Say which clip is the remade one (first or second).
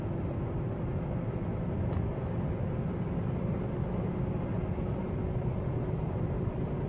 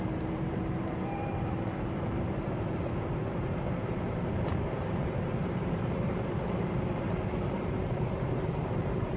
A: second